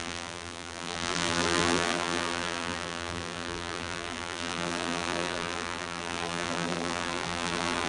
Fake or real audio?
fake